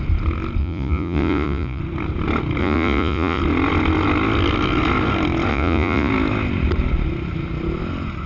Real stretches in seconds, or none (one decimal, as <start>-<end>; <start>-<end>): 0.0-0.6; 1.8-2.6; 3.4-5.5; 6.1-8.3